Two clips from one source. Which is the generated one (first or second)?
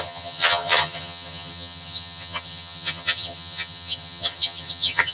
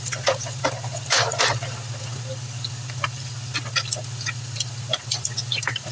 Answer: first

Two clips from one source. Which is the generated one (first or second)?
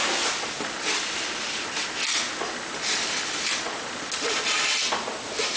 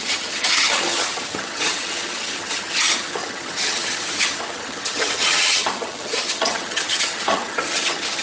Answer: second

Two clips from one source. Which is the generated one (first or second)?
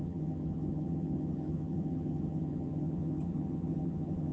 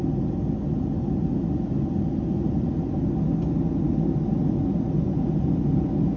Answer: first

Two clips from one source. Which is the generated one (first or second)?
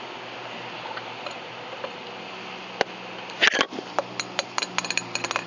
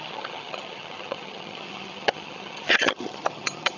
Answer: second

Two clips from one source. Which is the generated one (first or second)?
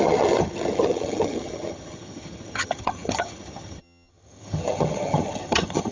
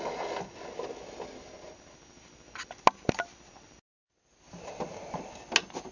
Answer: first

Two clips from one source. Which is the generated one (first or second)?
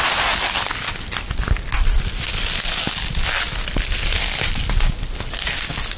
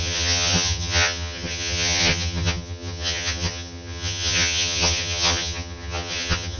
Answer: second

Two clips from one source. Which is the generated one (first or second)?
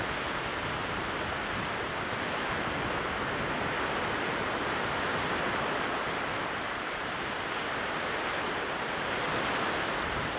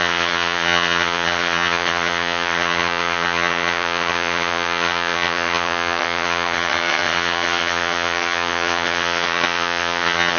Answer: second